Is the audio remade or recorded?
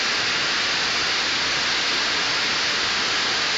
recorded